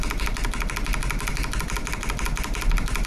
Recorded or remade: recorded